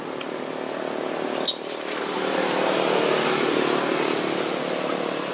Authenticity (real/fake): real